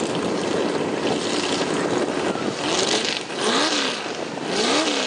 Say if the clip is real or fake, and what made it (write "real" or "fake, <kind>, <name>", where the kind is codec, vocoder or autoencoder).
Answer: real